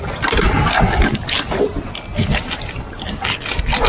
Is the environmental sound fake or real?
real